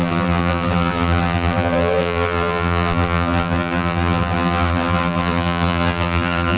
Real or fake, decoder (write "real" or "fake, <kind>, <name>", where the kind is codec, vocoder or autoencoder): fake, vocoder, BigVGAN v2